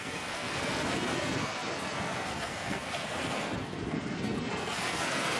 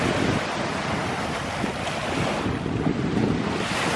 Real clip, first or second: second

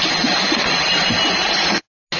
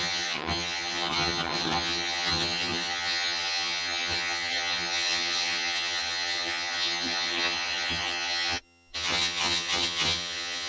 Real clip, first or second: first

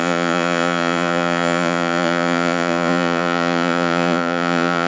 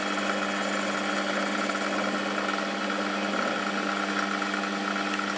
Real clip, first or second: second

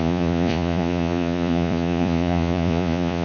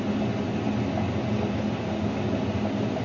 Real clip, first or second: second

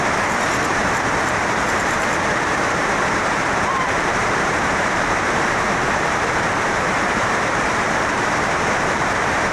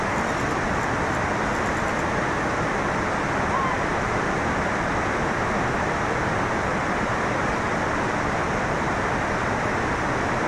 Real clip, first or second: second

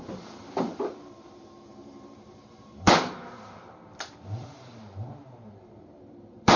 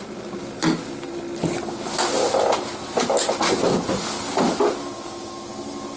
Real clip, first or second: second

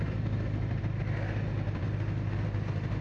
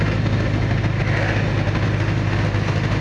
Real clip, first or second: second